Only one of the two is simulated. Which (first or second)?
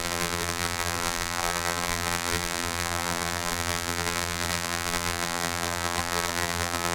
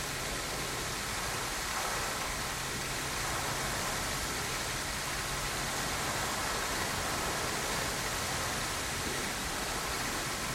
first